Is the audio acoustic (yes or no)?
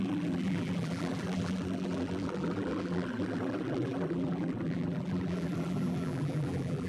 no